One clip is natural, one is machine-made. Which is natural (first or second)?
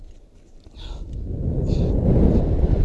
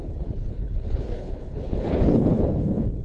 first